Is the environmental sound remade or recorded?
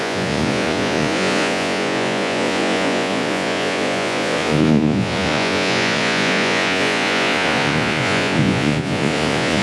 remade